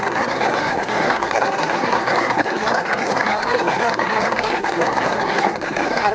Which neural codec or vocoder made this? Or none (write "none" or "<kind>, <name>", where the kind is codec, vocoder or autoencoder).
codec, SNAC